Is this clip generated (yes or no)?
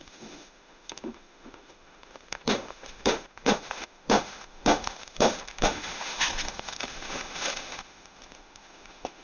yes